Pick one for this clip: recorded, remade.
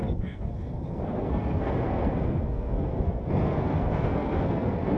remade